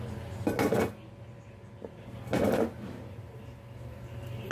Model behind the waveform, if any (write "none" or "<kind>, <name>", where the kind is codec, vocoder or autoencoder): none